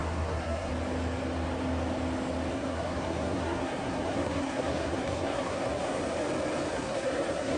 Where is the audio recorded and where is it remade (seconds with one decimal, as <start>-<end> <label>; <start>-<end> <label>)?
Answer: 0.0-0.7 remade; 0.7-2.5 recorded; 2.5-6.0 remade; 6.0-6.7 recorded; 6.7-7.6 remade